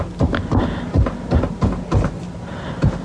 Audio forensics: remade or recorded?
recorded